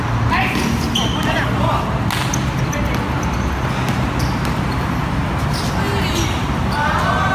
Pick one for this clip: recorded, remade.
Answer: recorded